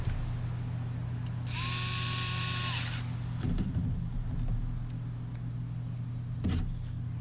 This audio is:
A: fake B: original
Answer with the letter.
B